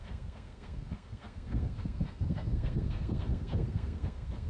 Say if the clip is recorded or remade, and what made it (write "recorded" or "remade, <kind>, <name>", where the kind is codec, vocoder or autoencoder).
remade, codec, SNAC